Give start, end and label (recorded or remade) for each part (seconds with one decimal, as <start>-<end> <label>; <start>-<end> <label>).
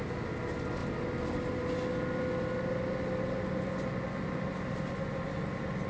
0.0-5.9 recorded